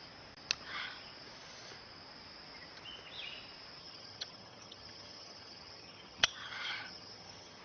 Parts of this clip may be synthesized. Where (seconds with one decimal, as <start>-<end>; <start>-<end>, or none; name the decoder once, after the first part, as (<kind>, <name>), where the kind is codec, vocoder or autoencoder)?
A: 3.8-7.6 (vocoder, HiFi-GAN)